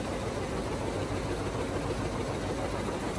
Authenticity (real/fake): real